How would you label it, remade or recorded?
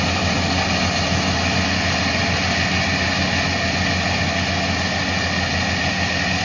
recorded